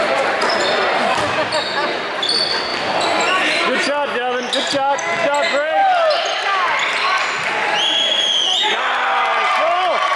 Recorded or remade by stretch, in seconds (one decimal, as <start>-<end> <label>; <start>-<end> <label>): 0.0-2.7 recorded; 2.7-3.3 remade; 3.3-5.8 recorded; 5.8-7.5 remade; 7.5-10.2 recorded